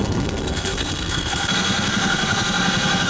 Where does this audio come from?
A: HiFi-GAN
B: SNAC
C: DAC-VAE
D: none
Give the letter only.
B